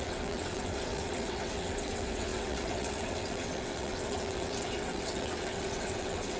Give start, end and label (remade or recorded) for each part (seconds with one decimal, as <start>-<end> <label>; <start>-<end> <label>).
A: 0.0-6.4 remade